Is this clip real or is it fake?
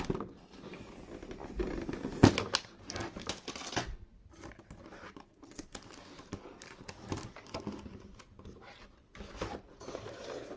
real